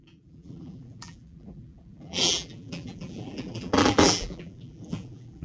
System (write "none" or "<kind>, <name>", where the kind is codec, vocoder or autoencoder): vocoder, BigVGAN v2